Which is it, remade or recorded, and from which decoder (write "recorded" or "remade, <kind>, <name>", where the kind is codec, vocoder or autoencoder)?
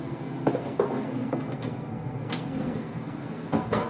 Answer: remade, codec, SNAC